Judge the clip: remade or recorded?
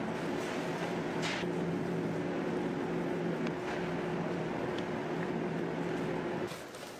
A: recorded